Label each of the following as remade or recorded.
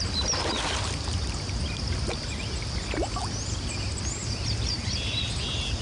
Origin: recorded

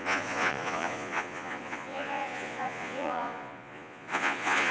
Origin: remade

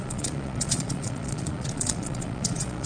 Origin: remade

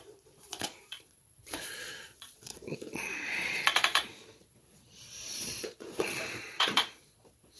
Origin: remade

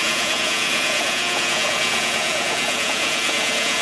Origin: remade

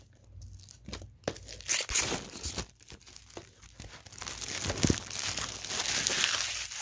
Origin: recorded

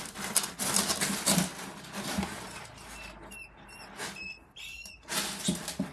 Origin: recorded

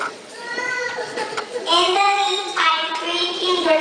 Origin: remade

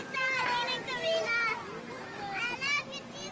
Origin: recorded